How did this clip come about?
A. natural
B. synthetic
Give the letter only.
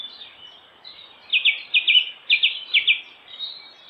A